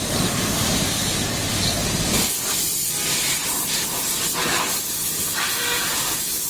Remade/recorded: recorded